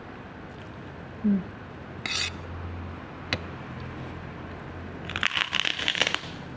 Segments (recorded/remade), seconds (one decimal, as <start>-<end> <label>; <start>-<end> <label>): 0.0-5.7 recorded; 5.7-6.6 remade